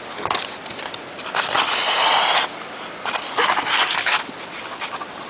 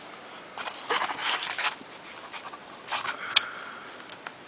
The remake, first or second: first